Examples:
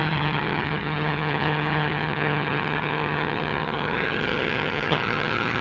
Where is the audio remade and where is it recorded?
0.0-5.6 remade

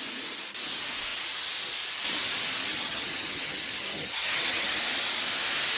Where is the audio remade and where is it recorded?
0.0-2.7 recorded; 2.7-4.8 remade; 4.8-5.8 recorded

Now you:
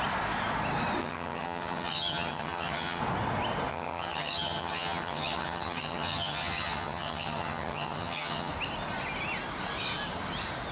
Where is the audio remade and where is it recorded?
0.0-1.0 recorded; 1.0-3.0 remade; 3.0-3.7 recorded; 3.7-8.5 remade; 8.5-10.7 recorded

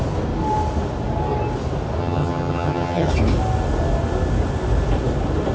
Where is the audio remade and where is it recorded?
0.0-2.0 recorded; 2.0-3.1 remade; 3.1-5.5 recorded

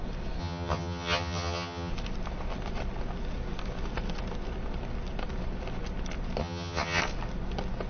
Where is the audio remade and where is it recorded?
0.0-0.4 recorded; 0.4-1.9 remade; 1.9-6.4 recorded; 6.4-7.0 remade; 7.0-7.9 recorded